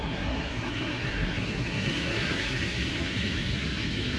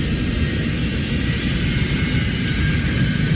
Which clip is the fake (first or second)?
first